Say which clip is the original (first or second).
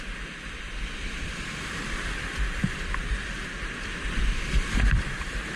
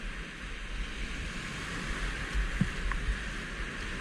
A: second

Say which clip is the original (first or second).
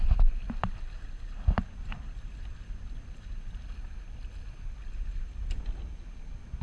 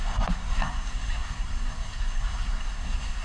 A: first